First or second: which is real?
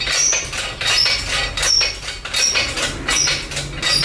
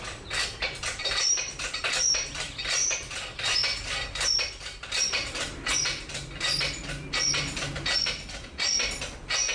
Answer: first